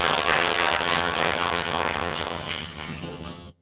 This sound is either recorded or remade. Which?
remade